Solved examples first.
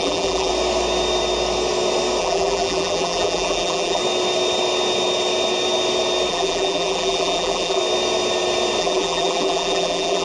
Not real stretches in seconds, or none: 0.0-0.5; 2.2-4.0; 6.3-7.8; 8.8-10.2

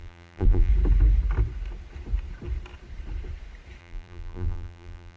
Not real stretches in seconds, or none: 0.0-0.7; 3.8-5.2

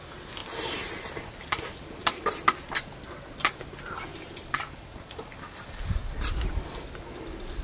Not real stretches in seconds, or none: 0.4-2.3; 4.1-6.4